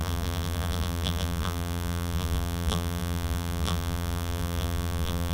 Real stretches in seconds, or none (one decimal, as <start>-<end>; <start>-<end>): none